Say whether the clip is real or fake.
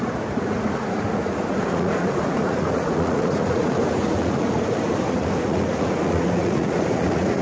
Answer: fake